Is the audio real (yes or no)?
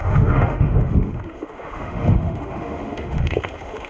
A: no